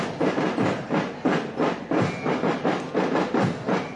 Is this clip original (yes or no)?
yes